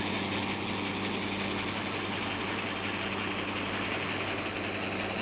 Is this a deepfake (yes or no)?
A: no